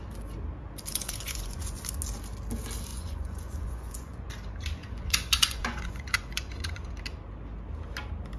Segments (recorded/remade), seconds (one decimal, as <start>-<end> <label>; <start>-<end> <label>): 0.0-0.9 recorded; 0.9-1.8 remade; 1.8-2.9 recorded; 2.9-4.3 remade; 4.3-4.8 recorded; 4.8-6.9 remade; 6.9-8.4 recorded